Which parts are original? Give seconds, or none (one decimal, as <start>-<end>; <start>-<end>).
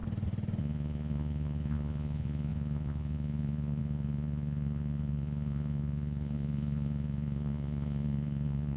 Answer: 0.0-0.6